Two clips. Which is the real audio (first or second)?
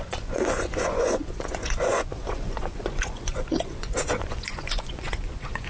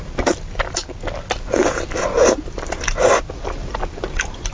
second